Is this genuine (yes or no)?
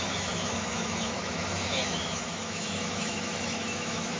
no